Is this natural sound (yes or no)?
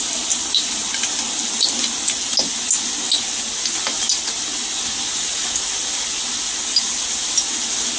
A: yes